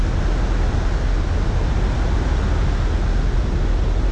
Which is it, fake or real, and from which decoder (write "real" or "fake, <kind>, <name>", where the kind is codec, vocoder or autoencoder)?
real